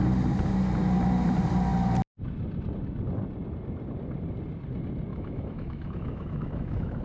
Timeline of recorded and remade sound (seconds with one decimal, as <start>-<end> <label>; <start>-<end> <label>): 0.0-5.1 recorded; 5.1-7.0 remade